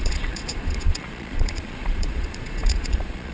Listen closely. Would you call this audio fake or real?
fake